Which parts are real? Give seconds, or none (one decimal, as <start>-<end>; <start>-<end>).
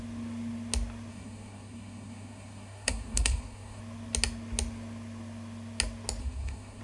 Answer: 0.0-1.1; 3.8-6.2